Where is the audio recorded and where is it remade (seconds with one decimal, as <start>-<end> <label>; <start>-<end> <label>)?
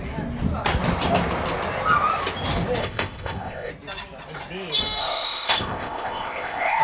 0.0-2.8 recorded; 2.8-3.7 remade; 3.7-5.0 recorded; 5.0-6.8 remade